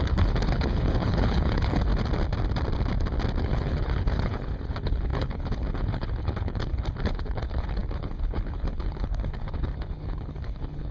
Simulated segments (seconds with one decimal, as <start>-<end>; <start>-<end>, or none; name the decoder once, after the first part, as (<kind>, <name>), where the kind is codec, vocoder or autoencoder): 0.0-1.9 (codec, HILCodec); 3.4-10.9